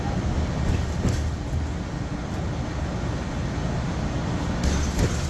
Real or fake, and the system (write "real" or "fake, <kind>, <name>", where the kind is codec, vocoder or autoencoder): real